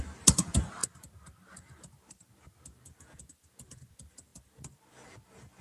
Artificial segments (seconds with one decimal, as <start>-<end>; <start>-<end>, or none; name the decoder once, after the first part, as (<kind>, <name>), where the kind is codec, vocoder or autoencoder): none